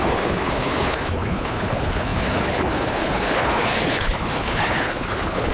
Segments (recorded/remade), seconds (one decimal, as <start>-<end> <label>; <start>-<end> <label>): 0.0-5.5 remade